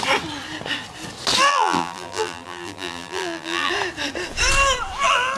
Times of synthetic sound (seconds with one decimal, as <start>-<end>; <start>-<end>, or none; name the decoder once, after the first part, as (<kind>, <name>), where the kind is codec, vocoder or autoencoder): 1.5-3.7 (vocoder, BigVGAN v2)